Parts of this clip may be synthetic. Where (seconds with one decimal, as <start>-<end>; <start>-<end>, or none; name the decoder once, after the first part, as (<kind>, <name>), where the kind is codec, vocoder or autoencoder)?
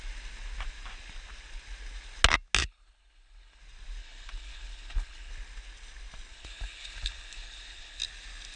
2.6-3.6 (codec, HILCodec); 4.0-5.3; 6.3-8.0